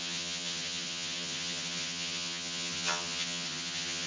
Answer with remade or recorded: remade